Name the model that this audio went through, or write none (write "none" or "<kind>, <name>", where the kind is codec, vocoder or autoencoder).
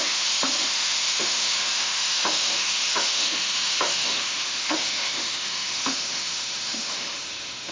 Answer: autoencoder, DAC-VAE